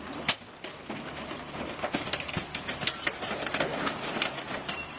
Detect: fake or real real